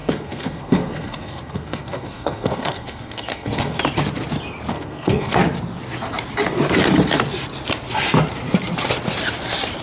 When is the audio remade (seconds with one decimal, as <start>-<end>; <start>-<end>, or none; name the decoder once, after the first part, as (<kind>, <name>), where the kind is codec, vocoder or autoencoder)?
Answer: 0.0-3.8 (codec, SNAC); 4.7-5.4

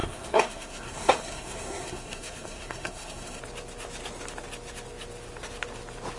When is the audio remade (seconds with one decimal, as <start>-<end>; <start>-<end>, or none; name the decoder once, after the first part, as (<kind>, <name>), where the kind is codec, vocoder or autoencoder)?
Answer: 0.0-3.4 (codec, SNAC)

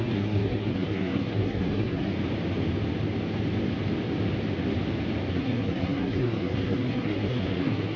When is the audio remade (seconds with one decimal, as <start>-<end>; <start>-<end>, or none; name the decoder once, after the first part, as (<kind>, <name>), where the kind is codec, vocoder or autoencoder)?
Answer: 0.0-2.1 (codec, SNAC); 5.3-8.0